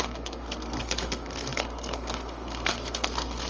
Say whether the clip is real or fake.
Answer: fake